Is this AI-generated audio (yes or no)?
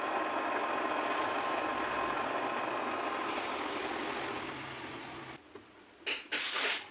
no